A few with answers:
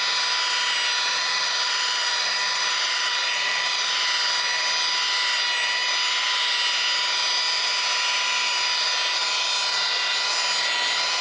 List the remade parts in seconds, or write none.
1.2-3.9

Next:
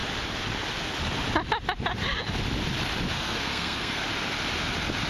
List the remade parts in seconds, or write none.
3.1-4.0